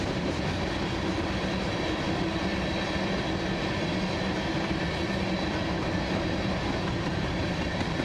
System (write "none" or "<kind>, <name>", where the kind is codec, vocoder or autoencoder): vocoder, BigVGAN v2